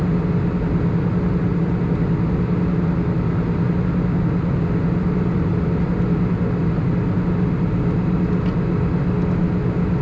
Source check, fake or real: real